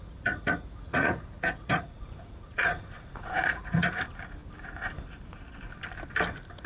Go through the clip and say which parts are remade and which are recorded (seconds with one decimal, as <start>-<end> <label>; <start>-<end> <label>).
0.0-4.0 remade; 4.0-6.7 recorded